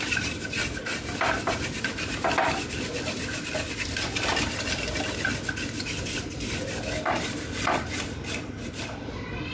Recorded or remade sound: recorded